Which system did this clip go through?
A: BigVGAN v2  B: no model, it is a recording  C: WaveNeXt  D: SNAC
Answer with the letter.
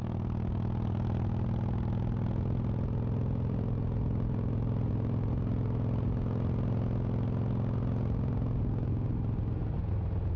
B